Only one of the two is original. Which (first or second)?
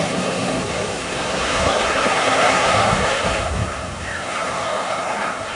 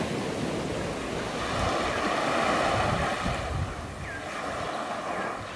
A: second